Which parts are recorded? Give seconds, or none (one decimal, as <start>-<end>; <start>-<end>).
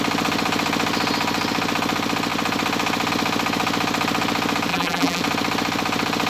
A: 0.0-4.7; 5.2-6.3